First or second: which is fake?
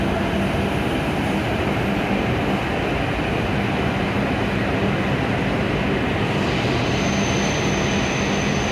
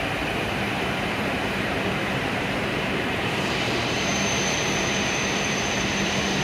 second